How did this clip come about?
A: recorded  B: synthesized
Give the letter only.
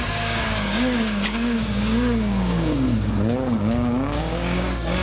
B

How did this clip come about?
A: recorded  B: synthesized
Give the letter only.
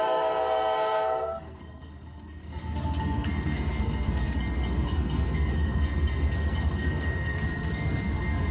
B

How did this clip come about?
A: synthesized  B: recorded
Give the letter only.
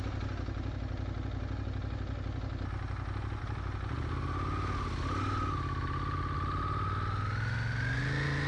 B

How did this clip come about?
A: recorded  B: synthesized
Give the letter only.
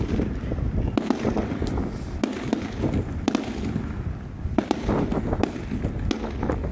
A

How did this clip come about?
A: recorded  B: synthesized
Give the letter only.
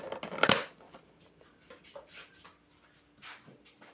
A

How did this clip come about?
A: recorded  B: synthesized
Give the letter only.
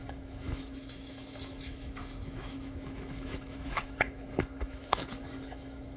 B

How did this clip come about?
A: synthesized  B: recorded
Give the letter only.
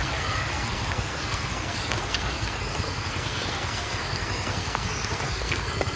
A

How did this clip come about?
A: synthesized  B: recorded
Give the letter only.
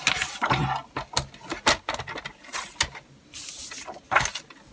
B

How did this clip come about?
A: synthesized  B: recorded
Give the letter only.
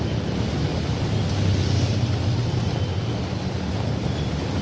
B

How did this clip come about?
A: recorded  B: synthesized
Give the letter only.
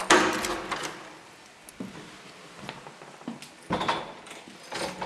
A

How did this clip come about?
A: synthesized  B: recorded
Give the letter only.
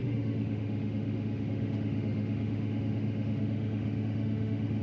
A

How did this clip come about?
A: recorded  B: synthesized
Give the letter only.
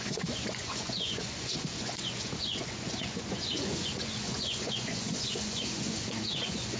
B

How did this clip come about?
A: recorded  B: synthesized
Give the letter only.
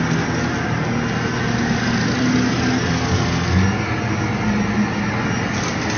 A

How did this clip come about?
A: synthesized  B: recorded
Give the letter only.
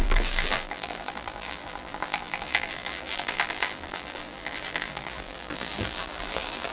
A